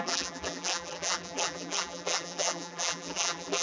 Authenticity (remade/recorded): remade